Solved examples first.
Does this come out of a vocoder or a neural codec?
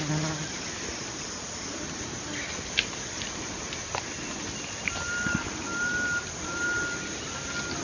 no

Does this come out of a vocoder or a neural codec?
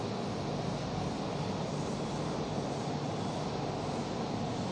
no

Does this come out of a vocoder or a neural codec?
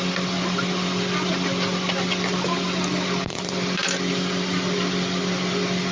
no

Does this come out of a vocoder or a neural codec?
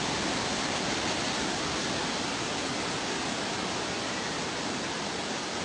no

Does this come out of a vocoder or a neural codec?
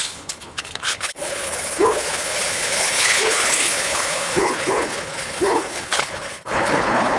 yes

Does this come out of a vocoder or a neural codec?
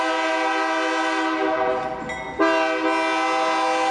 no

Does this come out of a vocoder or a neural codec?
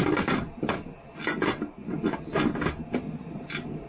no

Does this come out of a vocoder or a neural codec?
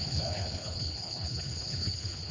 yes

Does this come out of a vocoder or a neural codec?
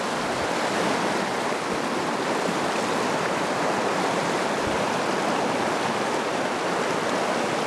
no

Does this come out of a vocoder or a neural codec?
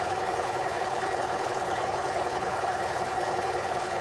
yes